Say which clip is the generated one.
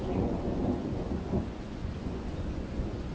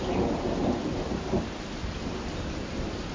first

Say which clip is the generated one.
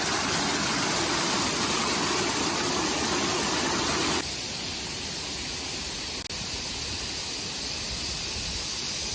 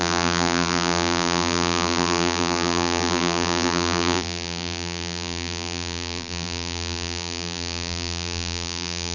second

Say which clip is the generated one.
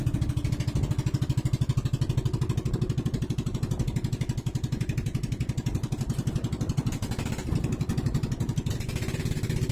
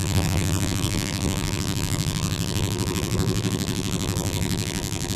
second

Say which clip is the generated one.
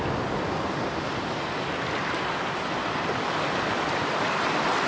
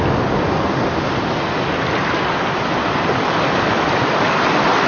first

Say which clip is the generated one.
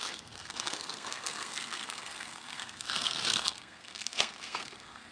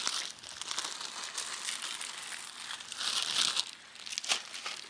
first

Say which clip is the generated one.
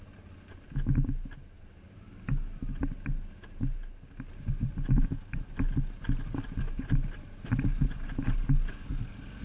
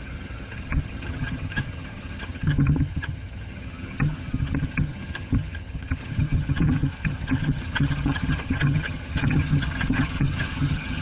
second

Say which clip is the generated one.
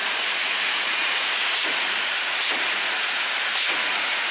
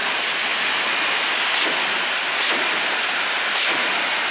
first